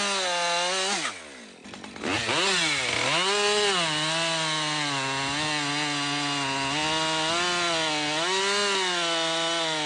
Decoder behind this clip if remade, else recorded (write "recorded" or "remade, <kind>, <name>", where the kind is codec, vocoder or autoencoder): recorded